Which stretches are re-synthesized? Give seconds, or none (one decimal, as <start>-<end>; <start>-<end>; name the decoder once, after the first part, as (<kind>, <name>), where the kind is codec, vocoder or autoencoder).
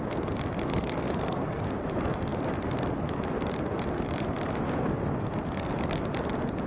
0.7-1.6 (codec, SNAC)